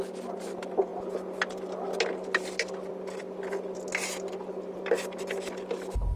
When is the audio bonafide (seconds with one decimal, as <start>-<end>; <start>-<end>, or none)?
0.0-6.2